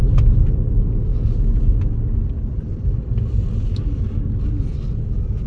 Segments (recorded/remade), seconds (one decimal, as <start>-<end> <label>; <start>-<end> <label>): 0.0-5.5 recorded